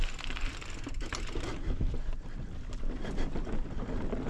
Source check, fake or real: real